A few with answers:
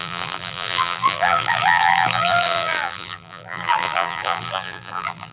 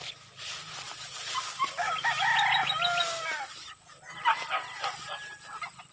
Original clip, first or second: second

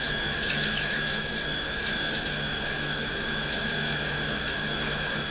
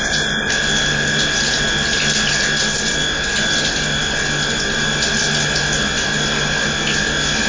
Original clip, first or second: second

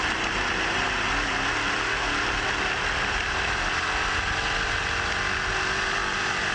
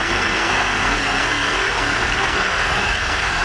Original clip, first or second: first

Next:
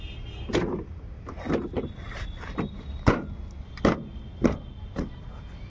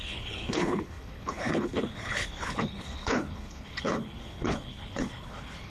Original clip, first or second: first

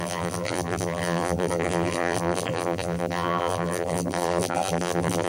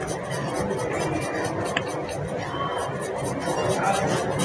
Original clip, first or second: second